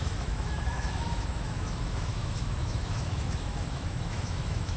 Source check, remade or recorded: remade